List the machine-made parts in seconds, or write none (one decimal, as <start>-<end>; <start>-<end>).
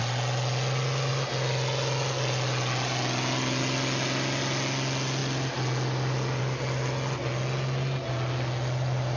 none